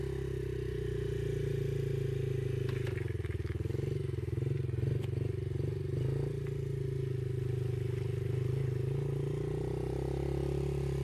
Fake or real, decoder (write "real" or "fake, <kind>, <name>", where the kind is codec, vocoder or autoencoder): real